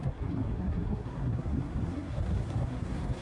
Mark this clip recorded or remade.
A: remade